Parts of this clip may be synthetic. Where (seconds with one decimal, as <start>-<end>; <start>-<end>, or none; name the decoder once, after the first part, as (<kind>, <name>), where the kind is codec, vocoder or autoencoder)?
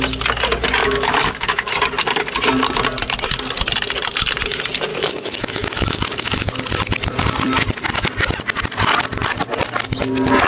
0.8-1.7 (autoencoder, DAC-VAE); 4.9-6.5